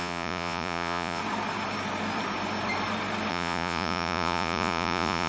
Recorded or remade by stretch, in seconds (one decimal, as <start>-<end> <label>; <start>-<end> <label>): 0.0-1.2 remade; 1.2-3.3 recorded; 3.3-5.3 remade